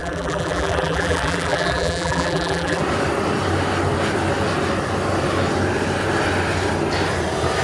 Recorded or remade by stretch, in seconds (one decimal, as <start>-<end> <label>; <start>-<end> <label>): 0.0-2.8 remade; 2.8-7.6 recorded